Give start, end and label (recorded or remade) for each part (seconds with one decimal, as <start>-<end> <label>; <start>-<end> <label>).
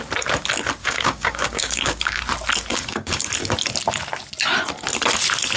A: 0.0-0.8 recorded; 0.8-2.2 remade; 2.2-2.7 recorded; 2.7-3.3 remade; 3.3-5.6 recorded